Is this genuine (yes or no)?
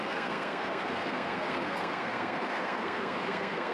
no